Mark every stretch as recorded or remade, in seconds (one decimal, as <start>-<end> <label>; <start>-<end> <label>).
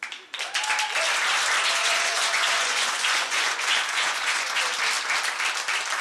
0.0-1.8 recorded; 1.8-4.6 remade; 4.6-6.0 recorded